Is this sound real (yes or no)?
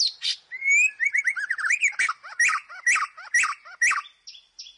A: yes